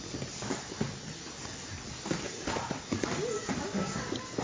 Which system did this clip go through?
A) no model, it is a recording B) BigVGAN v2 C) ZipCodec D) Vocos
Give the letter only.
A